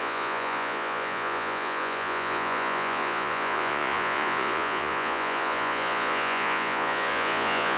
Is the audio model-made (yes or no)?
yes